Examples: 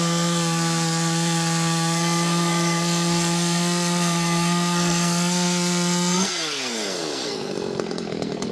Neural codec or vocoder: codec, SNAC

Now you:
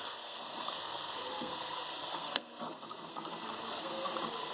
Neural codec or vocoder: codec, SNAC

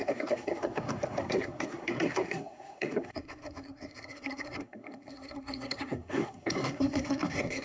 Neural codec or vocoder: codec, SNAC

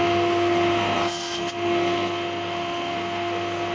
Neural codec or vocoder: codec, SNAC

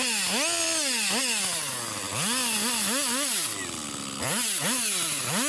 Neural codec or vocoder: none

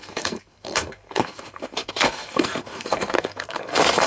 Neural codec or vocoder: codec, SNAC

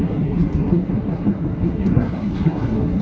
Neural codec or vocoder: codec, SNAC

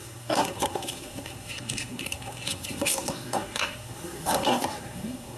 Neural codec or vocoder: codec, SNAC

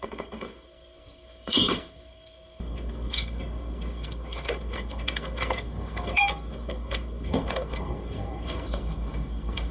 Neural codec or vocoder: codec, SNAC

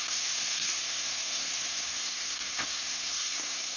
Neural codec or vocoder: codec, SNAC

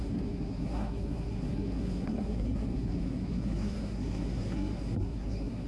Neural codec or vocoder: codec, SNAC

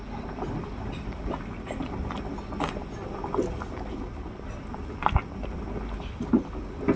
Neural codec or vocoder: none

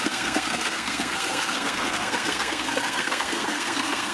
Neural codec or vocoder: codec, SNAC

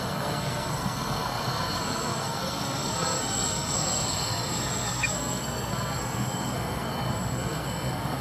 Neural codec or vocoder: codec, SNAC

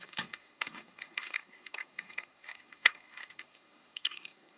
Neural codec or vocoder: codec, SNAC